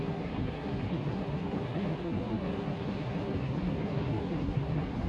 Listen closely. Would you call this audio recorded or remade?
remade